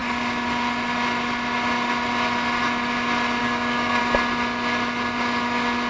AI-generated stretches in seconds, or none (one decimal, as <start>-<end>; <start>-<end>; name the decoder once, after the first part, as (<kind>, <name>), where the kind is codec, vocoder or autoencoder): 3.4-4.0 (codec, DAC)